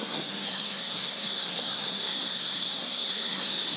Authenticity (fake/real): fake